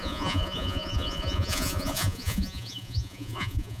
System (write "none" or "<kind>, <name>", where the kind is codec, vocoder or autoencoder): vocoder, Vocos